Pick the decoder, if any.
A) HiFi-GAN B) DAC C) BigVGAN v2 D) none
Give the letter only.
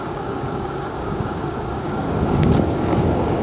B